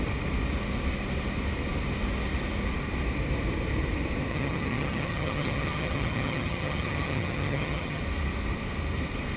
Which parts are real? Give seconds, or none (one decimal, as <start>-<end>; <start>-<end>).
0.0-4.3; 8.0-9.4